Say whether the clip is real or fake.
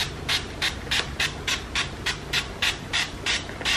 real